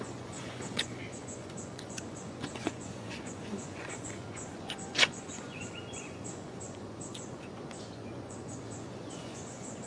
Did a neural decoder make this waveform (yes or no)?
yes